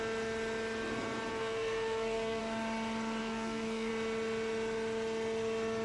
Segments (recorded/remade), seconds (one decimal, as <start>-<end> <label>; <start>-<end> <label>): 0.0-1.3 recorded; 1.3-2.4 remade; 2.4-3.2 recorded; 3.2-3.9 remade; 3.9-5.8 recorded

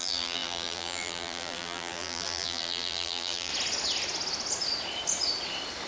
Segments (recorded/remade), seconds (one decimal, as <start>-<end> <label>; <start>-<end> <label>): 0.0-3.5 remade; 3.5-5.9 recorded